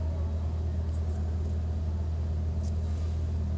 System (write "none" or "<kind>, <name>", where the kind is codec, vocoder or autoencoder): none